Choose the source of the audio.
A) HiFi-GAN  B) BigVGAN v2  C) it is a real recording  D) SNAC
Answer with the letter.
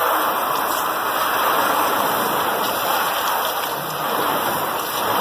B